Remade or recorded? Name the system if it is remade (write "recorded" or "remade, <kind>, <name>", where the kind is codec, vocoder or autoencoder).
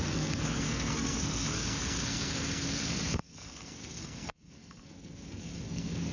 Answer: remade, codec, SNAC